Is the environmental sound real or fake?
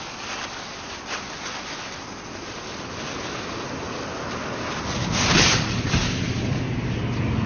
real